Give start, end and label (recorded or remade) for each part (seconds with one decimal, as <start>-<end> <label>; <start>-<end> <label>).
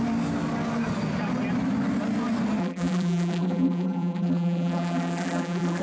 0.0-2.6 recorded; 2.6-5.8 remade